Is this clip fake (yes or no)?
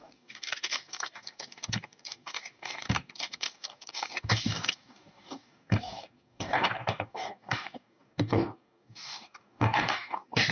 yes